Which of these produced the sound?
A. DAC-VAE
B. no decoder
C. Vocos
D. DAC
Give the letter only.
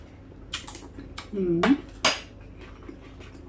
B